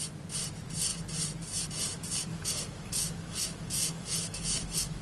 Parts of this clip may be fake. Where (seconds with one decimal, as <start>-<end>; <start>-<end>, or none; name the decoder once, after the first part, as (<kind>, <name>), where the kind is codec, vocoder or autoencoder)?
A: 2.3-5.0 (autoencoder, DAC-VAE)

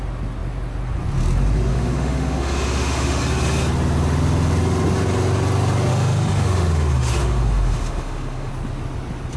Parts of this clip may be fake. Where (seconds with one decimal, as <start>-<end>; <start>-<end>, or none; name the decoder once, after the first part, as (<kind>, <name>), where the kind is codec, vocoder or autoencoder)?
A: 1.7-3.2 (autoencoder, DAC-VAE); 5.9-8.5

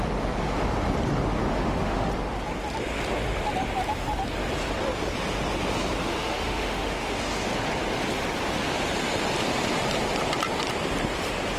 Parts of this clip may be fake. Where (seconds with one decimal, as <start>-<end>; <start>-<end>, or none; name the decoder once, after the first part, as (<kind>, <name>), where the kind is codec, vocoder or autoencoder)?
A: 1.5-2.1 (autoencoder, DAC-VAE); 6.1-7.4